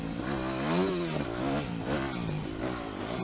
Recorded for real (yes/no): yes